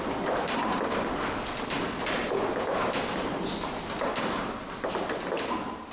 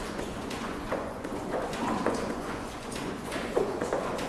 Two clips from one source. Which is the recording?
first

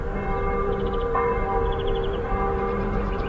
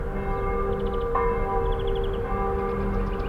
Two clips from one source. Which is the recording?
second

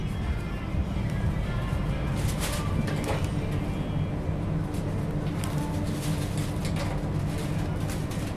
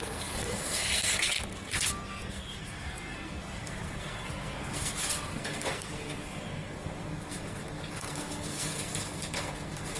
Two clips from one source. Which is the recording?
first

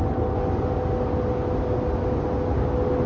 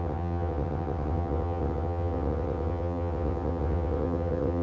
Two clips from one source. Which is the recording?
first